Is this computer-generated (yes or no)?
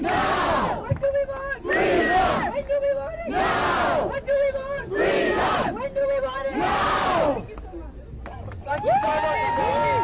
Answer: no